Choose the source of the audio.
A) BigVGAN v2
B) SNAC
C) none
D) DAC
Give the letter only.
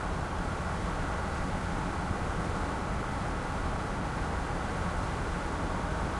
C